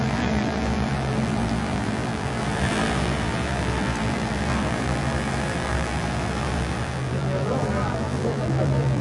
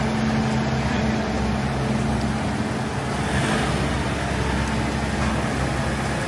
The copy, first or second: first